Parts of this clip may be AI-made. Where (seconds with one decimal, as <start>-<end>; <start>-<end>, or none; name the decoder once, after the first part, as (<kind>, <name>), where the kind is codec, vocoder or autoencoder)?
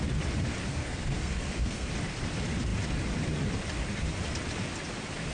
0.7-1.9 (codec, SNAC)